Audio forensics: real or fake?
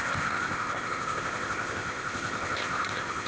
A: fake